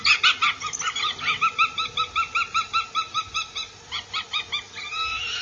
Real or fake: real